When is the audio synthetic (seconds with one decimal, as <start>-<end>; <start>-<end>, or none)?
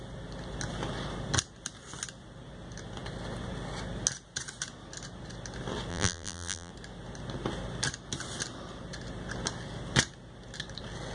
5.9-6.7